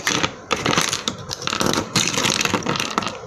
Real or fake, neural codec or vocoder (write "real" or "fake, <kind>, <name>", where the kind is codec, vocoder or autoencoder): fake, vocoder, BigVGAN v2